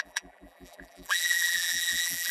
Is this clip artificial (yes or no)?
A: yes